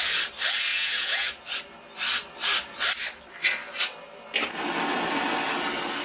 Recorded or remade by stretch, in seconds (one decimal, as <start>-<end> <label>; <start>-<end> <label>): 0.0-0.7 recorded; 0.7-1.4 remade; 1.4-6.0 recorded